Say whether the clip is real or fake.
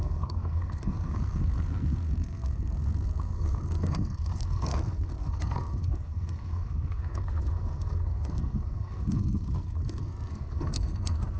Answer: fake